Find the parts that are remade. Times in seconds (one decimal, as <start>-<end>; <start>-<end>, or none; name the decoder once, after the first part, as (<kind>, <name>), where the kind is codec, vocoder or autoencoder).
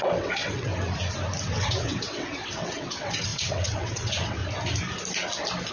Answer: 0.0-0.7 (vocoder, WaveNeXt); 1.4-4.4